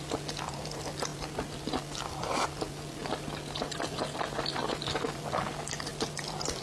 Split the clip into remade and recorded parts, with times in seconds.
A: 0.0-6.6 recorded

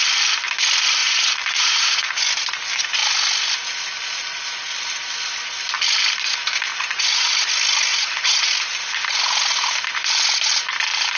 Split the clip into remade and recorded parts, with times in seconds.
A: 0.0-1.0 recorded; 1.0-2.2 remade; 2.2-6.7 recorded; 6.7-7.5 remade; 7.5-7.9 recorded; 7.9-8.5 remade; 8.5-11.2 recorded

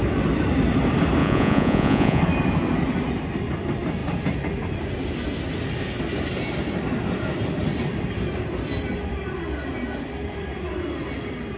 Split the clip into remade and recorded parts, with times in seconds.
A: 0.0-1.2 recorded; 1.2-2.2 remade; 2.2-11.6 recorded

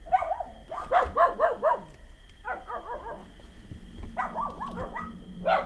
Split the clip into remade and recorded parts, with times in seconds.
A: 0.0-5.7 recorded

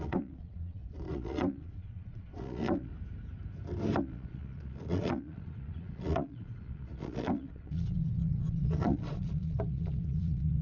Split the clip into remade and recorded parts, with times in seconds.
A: 0.0-2.9 remade; 2.9-4.0 recorded; 4.0-10.6 remade

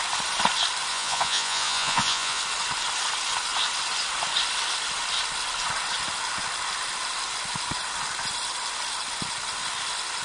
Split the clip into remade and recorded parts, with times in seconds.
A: 0.0-0.9 recorded; 0.9-2.4 remade; 2.4-10.2 recorded

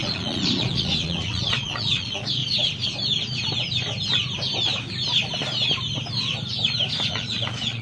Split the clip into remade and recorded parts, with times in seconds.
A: 0.0-2.4 remade; 2.4-7.1 recorded; 7.1-7.8 remade